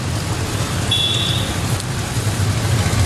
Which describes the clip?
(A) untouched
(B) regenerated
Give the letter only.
A